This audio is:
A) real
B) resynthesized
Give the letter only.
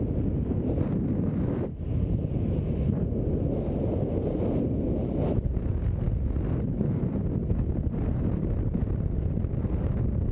A